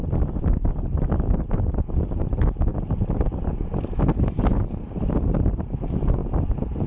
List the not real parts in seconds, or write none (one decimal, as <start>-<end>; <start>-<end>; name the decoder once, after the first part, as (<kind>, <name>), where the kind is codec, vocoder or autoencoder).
none